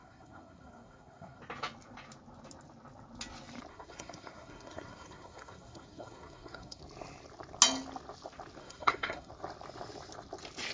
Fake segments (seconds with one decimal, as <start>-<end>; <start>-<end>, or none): 0.0-1.4; 3.7-6.8; 8.6-9.3

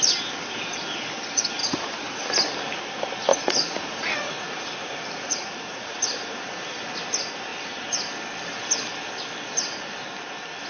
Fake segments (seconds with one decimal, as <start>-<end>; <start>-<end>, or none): 1.6-2.2; 3.3-6.0

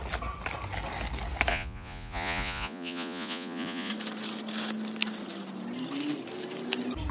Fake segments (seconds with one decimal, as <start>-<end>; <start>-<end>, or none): 1.5-3.9

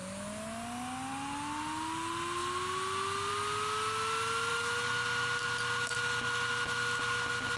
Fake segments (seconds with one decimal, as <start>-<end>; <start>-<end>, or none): none

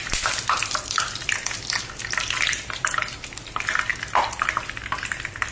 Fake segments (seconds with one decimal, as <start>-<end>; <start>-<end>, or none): none

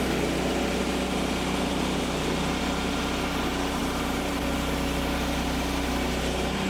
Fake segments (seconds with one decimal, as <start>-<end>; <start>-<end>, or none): 3.8-4.3

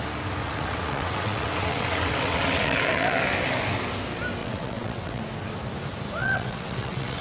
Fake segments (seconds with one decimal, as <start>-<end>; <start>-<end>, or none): 0.4-3.2; 4.4-5.2; 6.2-7.2

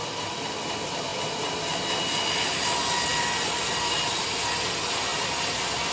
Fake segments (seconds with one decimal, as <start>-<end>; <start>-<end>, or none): none